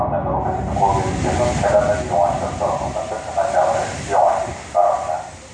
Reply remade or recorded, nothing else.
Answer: recorded